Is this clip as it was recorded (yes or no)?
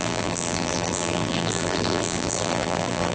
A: no